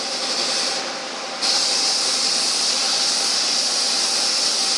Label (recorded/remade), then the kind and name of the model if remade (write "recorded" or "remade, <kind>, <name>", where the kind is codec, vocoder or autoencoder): recorded